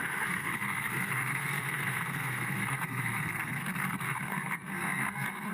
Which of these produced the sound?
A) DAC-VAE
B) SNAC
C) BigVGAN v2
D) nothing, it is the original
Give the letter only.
B